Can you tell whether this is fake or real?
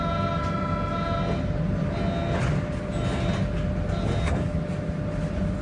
real